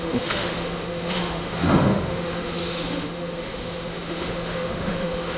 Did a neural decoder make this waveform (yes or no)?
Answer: yes